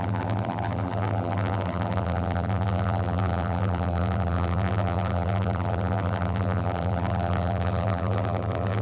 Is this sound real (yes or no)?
no